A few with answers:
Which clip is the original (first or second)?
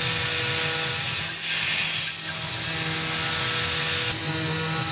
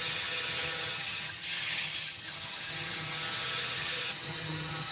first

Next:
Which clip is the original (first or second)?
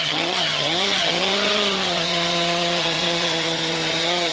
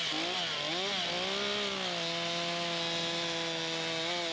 second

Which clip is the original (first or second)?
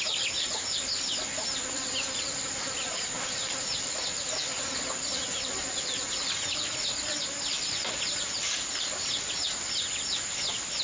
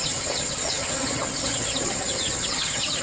first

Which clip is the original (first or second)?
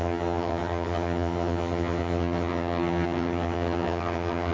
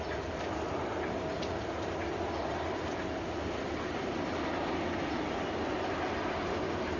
second